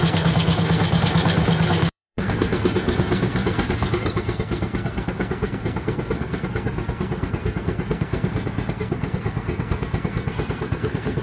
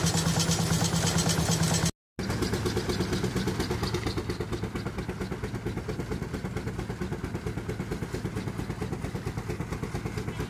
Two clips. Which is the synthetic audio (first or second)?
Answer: first